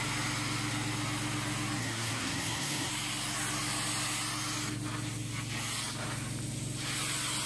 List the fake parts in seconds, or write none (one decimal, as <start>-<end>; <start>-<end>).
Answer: 1.8-2.9